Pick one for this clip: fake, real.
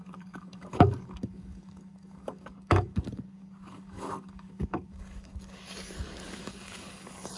fake